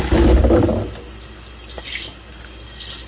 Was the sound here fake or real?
real